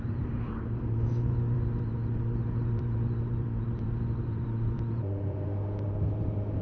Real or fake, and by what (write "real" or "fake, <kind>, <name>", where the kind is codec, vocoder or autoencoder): fake, vocoder, BigVGAN v2